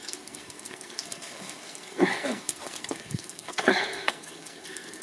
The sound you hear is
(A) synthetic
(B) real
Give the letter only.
A